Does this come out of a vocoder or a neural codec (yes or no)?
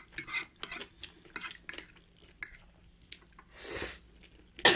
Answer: no